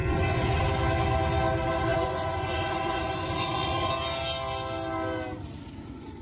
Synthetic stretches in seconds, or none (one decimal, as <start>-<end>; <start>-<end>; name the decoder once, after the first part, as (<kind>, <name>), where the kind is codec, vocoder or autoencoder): 0.0-0.6 (vocoder, Vocos); 1.9-3.9